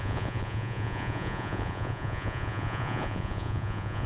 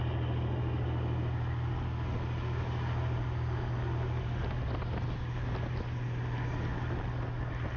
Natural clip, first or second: second